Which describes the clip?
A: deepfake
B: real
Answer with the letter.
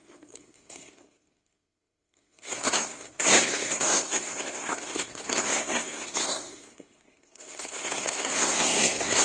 A